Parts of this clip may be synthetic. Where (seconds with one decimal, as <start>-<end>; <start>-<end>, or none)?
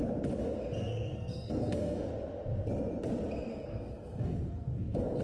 0.8-2.1; 3.5-5.2